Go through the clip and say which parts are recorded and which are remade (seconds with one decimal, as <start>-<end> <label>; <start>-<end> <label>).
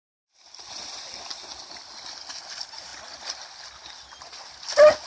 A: 0.0-5.1 recorded